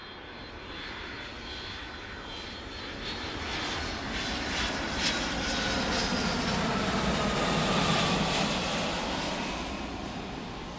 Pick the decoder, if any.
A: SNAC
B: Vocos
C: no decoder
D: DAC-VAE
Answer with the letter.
C